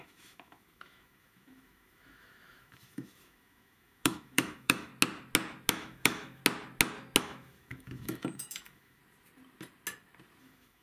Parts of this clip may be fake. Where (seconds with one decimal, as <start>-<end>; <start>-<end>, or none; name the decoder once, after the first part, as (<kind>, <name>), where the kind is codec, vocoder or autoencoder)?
0.0-4.9 (autoencoder, DAC-VAE); 5.7-6.4; 7.2-9.0; 10.4-10.8